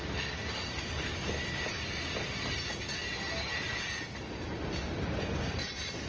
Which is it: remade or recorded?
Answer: recorded